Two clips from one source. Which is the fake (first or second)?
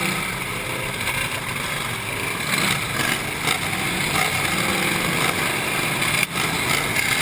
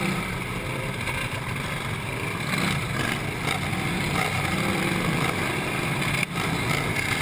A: second